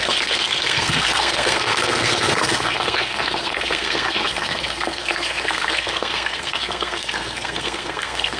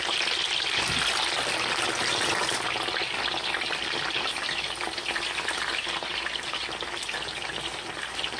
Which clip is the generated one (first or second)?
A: first